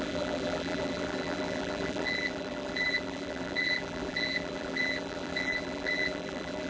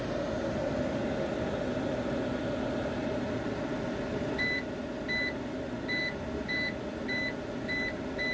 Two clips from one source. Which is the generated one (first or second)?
first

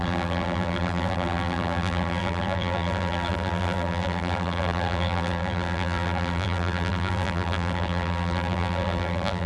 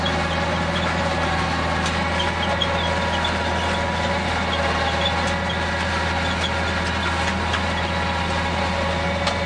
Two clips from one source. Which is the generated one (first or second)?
first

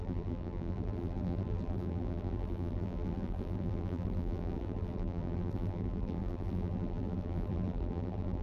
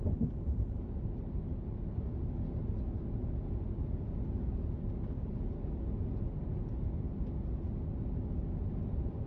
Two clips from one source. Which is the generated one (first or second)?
first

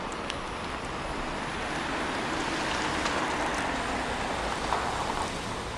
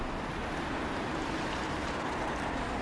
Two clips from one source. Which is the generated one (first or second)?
second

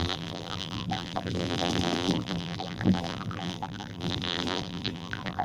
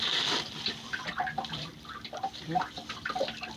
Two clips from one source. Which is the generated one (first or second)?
first